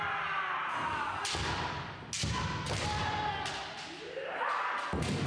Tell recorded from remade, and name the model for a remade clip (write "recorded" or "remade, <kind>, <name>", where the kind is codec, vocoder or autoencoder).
recorded